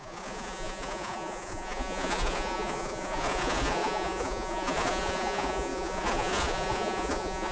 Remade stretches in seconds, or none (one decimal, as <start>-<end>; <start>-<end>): 0.0-7.5